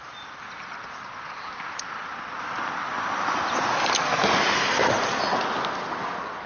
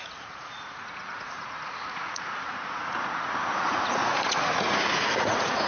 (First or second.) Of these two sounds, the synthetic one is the second